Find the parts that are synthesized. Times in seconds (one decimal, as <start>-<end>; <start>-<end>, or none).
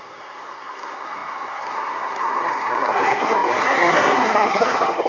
0.0-5.1